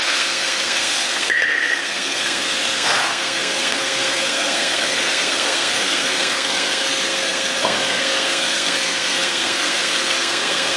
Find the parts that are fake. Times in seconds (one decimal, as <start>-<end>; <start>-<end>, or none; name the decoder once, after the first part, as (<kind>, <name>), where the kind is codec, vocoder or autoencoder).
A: 0.0-10.8 (codec, SNAC)